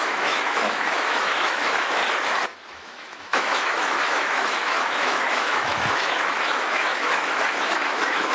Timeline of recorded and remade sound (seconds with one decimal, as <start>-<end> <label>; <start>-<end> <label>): 0.0-2.0 remade; 2.0-2.7 recorded; 2.7-8.3 remade